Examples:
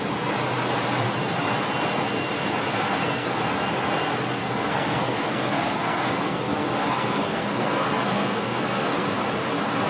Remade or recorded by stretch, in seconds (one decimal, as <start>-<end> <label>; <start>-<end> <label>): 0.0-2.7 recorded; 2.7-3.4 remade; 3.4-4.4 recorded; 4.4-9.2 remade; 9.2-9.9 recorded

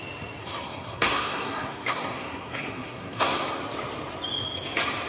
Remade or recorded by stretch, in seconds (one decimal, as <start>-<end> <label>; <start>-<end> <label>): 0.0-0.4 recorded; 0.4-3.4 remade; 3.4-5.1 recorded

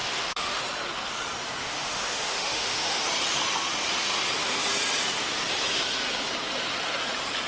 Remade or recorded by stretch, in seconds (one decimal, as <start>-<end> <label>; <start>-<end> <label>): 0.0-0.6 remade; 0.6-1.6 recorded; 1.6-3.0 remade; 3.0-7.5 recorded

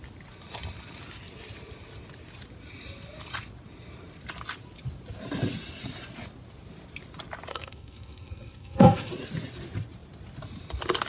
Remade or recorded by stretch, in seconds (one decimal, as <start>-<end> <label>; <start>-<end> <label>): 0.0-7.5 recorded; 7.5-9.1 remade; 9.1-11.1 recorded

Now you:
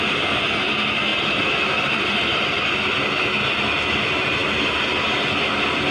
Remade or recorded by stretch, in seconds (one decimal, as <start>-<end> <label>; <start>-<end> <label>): 0.0-1.1 recorded; 1.1-2.6 remade; 2.6-4.4 recorded; 4.4-5.2 remade; 5.2-5.9 recorded

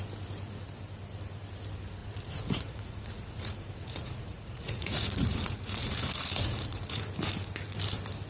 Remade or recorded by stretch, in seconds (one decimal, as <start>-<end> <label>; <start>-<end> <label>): 0.0-2.0 recorded; 2.0-7.0 remade; 7.0-8.3 recorded

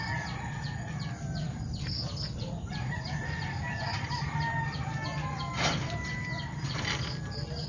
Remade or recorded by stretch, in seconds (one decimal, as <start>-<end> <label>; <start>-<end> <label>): 0.0-7.7 recorded